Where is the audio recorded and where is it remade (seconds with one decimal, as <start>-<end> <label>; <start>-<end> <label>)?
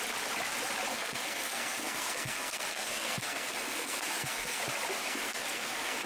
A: 0.0-0.9 recorded; 0.9-4.6 remade; 4.6-5.0 recorded; 5.0-6.1 remade